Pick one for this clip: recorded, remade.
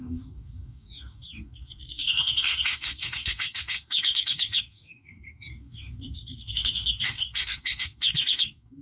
remade